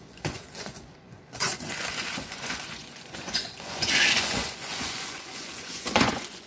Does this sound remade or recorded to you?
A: remade